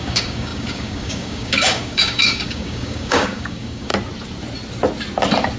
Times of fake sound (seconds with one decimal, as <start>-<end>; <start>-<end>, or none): 0.0-3.9